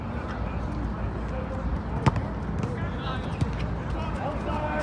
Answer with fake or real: real